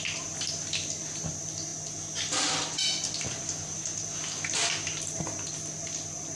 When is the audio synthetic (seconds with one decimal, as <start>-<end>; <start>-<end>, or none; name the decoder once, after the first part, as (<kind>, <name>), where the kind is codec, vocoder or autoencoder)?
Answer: none